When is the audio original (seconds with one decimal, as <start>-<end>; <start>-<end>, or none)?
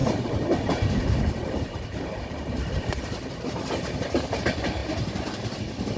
3.6-6.0